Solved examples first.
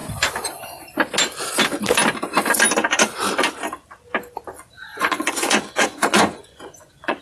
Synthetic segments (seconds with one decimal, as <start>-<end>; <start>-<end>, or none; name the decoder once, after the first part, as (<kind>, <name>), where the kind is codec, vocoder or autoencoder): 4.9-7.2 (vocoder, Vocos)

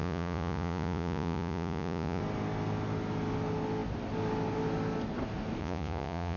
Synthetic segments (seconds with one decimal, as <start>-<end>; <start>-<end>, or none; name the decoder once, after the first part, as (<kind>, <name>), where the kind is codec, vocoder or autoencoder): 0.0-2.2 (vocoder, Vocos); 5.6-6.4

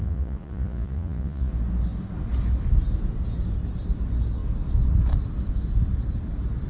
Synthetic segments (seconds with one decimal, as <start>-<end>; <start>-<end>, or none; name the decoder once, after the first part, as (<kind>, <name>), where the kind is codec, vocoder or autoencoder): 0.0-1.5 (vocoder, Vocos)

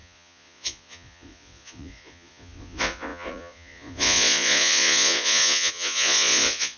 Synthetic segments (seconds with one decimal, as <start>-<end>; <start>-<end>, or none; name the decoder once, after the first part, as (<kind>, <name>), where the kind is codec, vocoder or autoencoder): 0.0-6.8 (vocoder, Vocos)